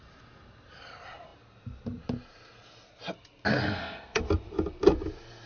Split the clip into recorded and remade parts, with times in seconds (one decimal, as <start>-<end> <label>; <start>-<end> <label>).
0.0-3.5 recorded; 3.5-4.2 remade; 4.2-5.5 recorded